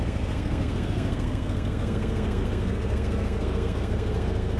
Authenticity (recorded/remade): remade